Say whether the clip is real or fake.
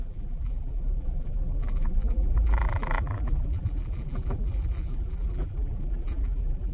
fake